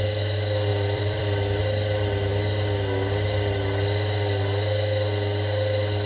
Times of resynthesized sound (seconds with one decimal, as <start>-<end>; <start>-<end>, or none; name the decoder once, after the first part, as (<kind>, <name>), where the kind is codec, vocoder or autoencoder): 0.7-1.6 (vocoder, BigVGAN v2)